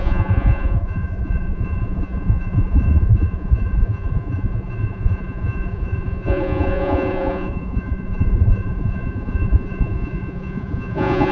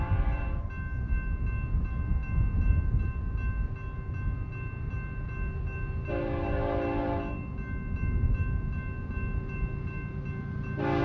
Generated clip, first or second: first